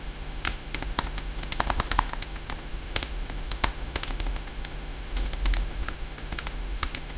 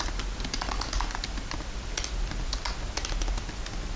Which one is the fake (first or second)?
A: first